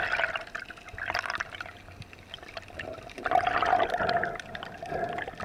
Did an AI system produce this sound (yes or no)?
no